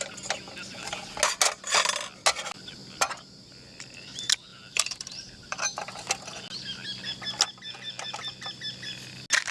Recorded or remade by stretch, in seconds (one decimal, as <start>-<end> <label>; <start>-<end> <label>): 0.0-4.5 recorded; 4.5-6.1 remade; 6.1-9.5 recorded